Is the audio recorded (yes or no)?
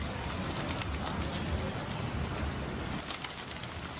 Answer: yes